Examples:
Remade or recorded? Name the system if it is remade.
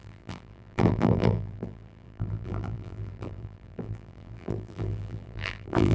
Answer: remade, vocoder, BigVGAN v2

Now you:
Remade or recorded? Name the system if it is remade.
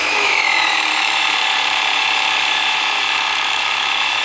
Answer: remade, autoencoder, DAC-VAE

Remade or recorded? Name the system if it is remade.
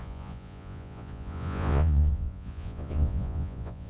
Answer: remade, vocoder, Vocos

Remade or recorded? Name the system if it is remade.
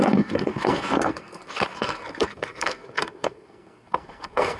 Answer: remade, codec, SNAC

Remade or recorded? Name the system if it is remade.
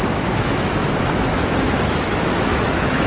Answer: remade, autoencoder, DAC-VAE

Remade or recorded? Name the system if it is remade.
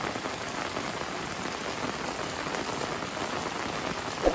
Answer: recorded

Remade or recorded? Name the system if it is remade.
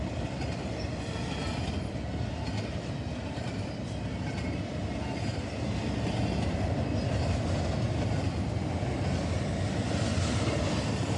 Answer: recorded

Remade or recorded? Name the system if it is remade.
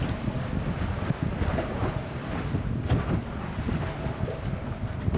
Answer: recorded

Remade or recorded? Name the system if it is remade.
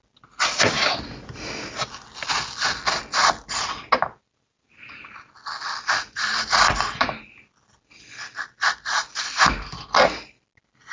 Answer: recorded